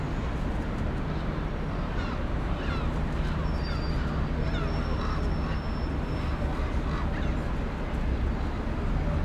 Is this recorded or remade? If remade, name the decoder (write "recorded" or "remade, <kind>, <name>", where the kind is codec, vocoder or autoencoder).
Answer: recorded